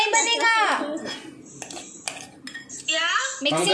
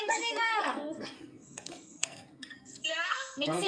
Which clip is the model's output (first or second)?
second